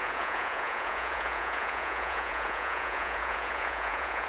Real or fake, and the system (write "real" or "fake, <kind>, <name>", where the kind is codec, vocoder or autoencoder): fake, vocoder, Vocos